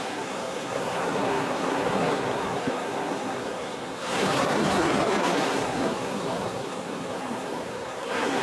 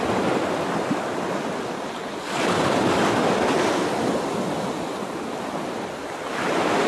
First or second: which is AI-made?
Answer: first